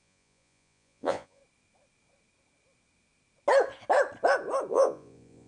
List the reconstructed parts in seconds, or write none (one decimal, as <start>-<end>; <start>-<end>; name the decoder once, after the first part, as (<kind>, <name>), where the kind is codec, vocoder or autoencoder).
0.0-1.4 (vocoder, Vocos); 4.7-5.5

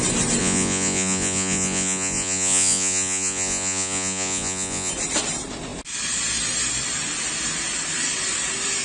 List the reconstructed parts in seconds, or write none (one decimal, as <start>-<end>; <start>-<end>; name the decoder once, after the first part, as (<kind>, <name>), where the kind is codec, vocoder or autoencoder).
0.4-4.9 (vocoder, Vocos)

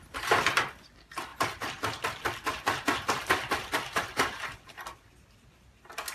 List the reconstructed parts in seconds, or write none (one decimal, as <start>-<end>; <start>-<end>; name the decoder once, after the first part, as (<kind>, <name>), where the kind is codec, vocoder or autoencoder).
1.3-4.6 (vocoder, BigVGAN v2)

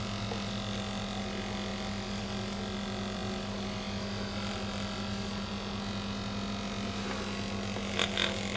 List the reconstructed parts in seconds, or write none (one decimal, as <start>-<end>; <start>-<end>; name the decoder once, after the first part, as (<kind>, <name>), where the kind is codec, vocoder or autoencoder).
none

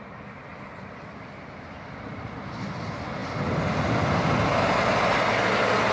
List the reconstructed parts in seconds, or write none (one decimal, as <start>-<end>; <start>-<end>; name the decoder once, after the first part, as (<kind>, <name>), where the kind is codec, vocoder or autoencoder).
none

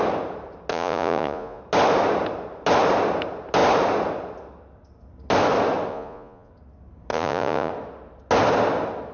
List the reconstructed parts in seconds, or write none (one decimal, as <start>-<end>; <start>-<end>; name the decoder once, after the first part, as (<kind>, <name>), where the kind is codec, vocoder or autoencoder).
0.7-1.6 (vocoder, Vocos); 5.9-6.5; 7.1-7.7

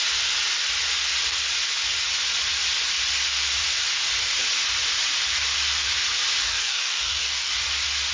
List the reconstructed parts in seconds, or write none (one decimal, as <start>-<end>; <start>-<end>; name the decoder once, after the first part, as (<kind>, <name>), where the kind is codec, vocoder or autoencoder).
6.4-7.5 (codec, DAC)

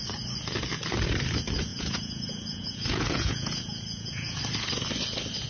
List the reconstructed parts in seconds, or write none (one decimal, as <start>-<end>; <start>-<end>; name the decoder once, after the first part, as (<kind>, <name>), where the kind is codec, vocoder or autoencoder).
1.7-4.4 (vocoder, Vocos)